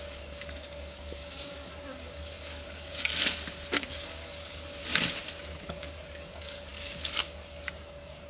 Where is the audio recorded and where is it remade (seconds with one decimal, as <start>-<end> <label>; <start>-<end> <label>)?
0.0-3.1 remade; 3.1-3.9 recorded; 3.9-4.8 remade; 4.8-5.6 recorded; 5.6-8.3 remade